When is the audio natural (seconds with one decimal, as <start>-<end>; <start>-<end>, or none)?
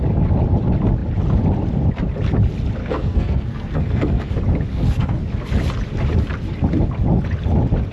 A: 0.0-2.8; 4.3-4.7; 5.2-7.9